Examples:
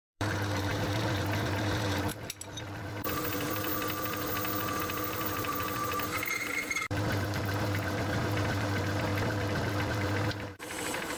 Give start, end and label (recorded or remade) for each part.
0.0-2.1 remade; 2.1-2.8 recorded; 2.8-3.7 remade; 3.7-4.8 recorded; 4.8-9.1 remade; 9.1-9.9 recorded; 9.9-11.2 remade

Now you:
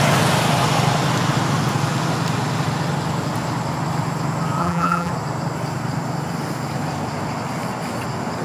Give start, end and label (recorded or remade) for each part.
0.0-4.6 recorded; 4.6-5.1 remade; 5.1-8.4 recorded

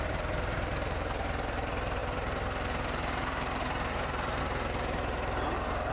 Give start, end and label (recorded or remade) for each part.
0.0-5.9 remade

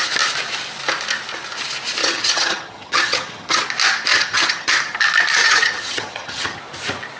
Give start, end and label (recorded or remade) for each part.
0.0-2.0 recorded; 2.0-3.6 remade; 3.6-4.1 recorded; 4.1-4.7 remade; 4.7-5.4 recorded; 5.4-6.6 remade; 6.6-7.2 recorded

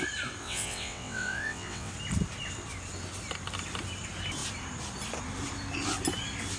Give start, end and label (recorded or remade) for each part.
0.0-0.4 recorded; 0.4-1.9 remade; 1.9-6.6 recorded

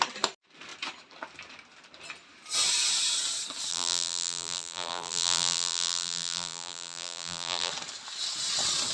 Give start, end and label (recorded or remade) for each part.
0.0-3.7 recorded; 3.7-7.7 remade; 7.7-8.9 recorded